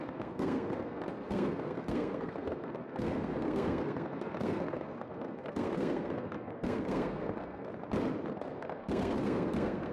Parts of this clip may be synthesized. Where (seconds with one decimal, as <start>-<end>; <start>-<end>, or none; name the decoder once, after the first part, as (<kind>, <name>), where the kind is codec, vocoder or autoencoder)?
0.0-7.7 (codec, SNAC); 8.3-9.9